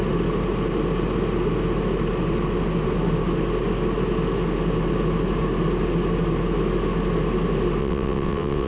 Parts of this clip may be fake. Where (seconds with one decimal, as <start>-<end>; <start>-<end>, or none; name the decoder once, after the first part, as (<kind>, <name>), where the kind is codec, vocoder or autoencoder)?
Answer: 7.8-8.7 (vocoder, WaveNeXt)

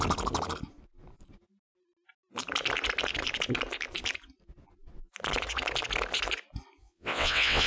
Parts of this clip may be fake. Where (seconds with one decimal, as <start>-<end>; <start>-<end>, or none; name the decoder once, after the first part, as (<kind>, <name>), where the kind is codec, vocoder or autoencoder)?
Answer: 6.8-7.7 (vocoder, WaveNeXt)

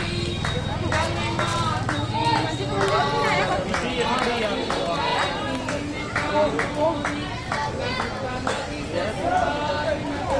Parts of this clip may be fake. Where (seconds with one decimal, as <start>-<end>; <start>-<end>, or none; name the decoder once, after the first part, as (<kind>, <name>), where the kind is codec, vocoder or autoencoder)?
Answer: none